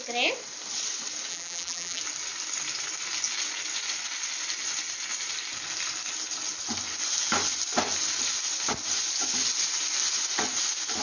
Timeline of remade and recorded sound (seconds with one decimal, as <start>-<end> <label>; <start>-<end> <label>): 0.0-1.3 recorded; 1.3-2.0 remade; 2.0-11.0 recorded